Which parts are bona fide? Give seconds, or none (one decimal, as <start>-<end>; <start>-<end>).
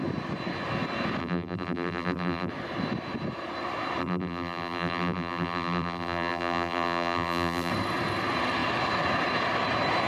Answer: 0.0-1.2; 2.5-4.0; 7.7-10.1